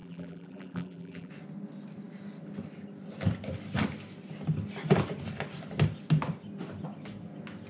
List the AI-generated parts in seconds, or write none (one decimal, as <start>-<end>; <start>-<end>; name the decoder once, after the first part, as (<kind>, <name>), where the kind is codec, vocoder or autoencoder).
0.0-1.3 (vocoder, BigVGAN v2)